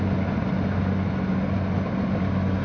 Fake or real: real